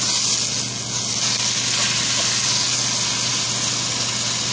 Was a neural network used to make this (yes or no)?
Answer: no